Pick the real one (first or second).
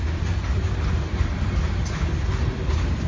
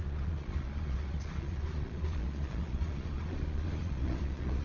first